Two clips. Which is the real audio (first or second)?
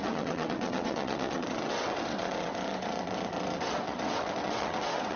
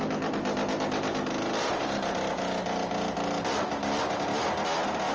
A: second